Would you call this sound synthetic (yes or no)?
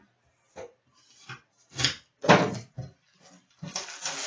no